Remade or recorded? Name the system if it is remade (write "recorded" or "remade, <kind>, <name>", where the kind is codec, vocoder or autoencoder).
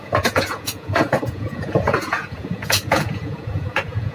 remade, vocoder, Vocos